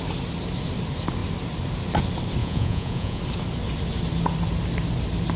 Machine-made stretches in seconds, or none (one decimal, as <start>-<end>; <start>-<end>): 2.4-3.2